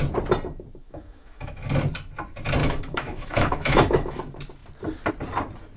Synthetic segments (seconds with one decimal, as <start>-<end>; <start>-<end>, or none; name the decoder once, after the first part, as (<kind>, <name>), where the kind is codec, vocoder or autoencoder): 0.8-1.5 (autoencoder, DAC-VAE); 2.6-4.1